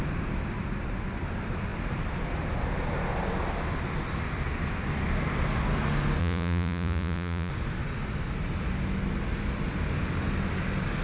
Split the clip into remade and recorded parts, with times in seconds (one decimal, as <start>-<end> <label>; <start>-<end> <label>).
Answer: 0.0-6.2 recorded; 6.2-7.5 remade; 7.5-11.0 recorded